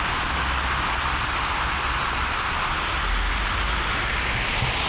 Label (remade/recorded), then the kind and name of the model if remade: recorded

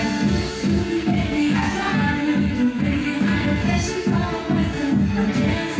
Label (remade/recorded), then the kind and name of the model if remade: remade, codec, SNAC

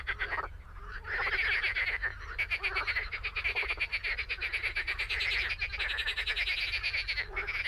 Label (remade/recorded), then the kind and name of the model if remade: recorded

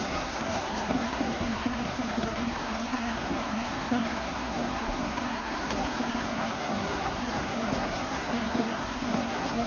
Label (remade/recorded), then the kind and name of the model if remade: remade, codec, SNAC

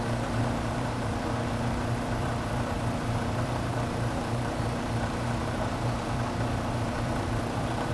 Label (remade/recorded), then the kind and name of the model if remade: remade, vocoder, BigVGAN v2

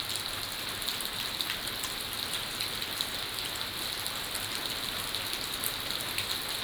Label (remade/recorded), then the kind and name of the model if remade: recorded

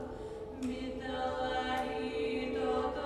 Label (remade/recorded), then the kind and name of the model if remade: recorded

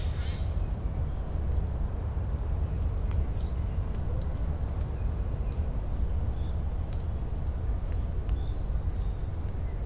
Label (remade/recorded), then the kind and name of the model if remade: recorded